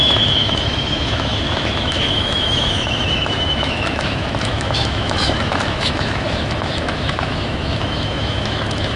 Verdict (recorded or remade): remade